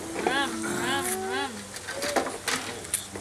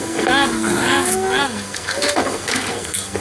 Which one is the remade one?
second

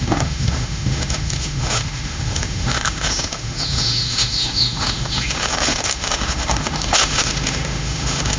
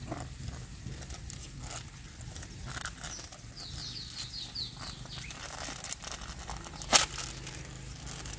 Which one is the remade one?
first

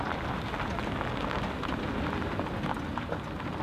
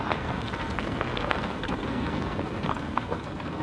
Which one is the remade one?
second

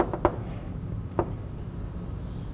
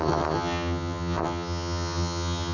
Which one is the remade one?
second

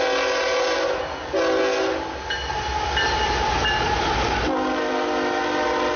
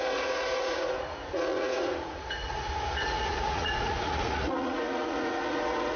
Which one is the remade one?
second